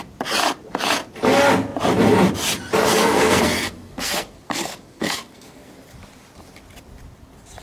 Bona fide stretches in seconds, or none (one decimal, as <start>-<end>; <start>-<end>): 0.0-2.9; 5.7-7.6